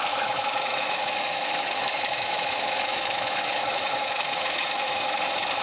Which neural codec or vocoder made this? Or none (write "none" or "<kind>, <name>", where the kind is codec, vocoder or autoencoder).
autoencoder, DAC-VAE